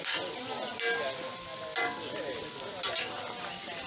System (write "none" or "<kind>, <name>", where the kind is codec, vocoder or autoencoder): none